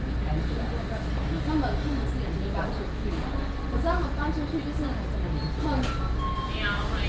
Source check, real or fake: real